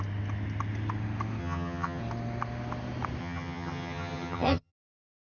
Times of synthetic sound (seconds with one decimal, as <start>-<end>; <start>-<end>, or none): 1.4-2.0; 3.2-4.7